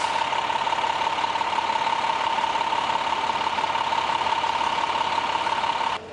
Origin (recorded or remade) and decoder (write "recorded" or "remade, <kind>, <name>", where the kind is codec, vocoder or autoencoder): recorded